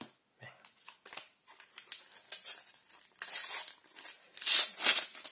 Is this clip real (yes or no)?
yes